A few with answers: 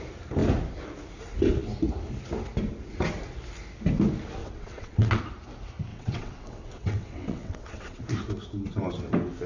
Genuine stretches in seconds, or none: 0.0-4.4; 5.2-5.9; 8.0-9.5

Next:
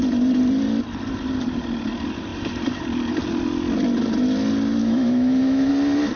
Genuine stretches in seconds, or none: 0.0-4.8; 5.7-6.2